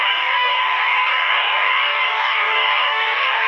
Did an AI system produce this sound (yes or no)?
yes